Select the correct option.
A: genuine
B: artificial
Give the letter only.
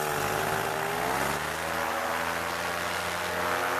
A